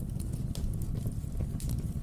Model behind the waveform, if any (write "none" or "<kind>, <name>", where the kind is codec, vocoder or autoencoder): none